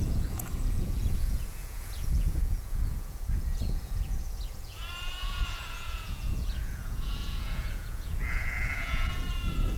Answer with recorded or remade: remade